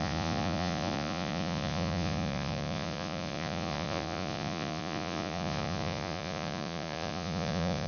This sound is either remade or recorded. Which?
remade